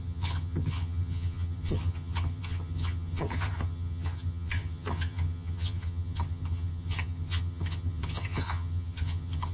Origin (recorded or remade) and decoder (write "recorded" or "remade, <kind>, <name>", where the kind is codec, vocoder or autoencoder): remade, vocoder, HiFi-GAN